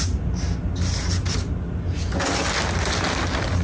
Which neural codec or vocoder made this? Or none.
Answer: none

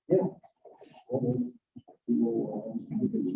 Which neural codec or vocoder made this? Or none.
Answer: none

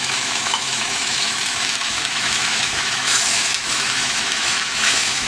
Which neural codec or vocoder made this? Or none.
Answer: autoencoder, DAC-VAE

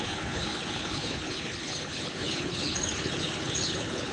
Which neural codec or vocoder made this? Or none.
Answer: codec, HILCodec